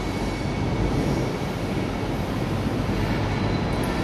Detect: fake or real real